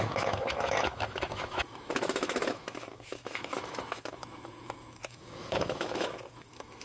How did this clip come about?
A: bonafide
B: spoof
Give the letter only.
B